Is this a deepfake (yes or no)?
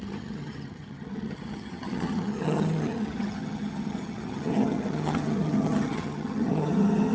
yes